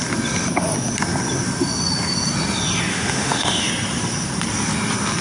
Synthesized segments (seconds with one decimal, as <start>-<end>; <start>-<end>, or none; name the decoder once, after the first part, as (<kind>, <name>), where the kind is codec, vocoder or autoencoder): 2.9-3.7 (autoencoder, DAC-VAE)